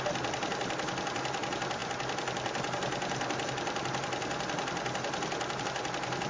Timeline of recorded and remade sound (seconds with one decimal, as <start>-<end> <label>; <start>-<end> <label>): 0.0-6.3 recorded